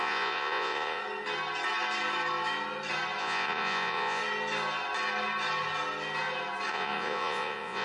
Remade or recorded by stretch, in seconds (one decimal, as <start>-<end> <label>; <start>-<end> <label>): 0.0-1.0 remade; 1.0-3.2 recorded; 3.2-4.2 remade; 4.2-6.7 recorded; 6.7-7.8 remade